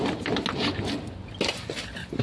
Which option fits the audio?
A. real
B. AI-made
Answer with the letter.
A